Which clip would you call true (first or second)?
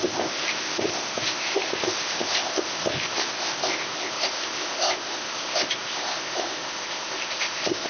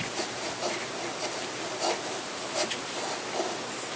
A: second